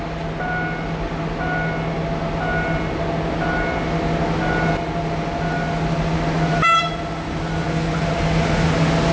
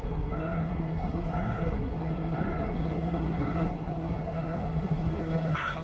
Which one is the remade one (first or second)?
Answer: second